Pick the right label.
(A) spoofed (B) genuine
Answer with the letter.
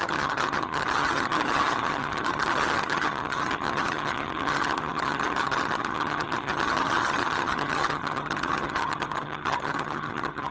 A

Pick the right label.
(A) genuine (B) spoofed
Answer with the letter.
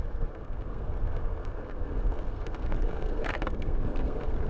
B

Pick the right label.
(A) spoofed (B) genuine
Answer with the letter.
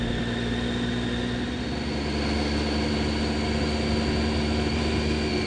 B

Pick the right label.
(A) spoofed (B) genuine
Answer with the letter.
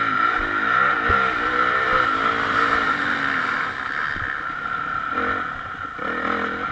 B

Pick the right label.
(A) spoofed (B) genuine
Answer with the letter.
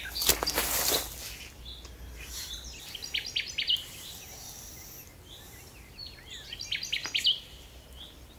B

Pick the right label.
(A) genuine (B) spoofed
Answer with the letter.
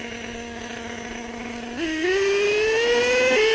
A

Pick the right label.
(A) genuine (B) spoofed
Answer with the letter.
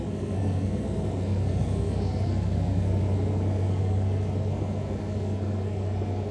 B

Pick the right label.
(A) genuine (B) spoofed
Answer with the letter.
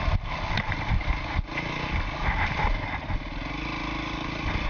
A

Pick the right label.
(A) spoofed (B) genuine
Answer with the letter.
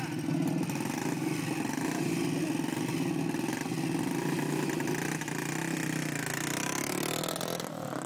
B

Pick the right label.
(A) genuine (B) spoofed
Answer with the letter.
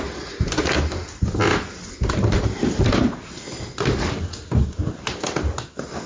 A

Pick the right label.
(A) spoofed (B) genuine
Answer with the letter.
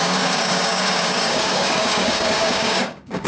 A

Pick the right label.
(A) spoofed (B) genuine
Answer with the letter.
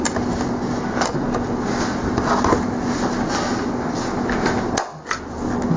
B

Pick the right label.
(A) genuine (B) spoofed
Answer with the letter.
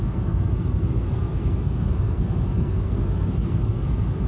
B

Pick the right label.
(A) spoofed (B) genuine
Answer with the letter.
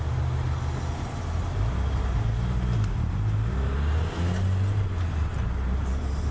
B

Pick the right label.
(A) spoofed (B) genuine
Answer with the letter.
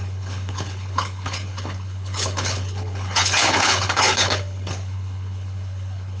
A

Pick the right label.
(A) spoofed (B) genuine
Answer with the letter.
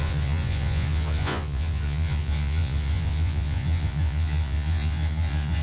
A